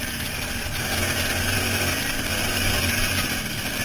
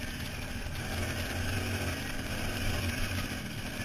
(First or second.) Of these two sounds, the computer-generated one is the second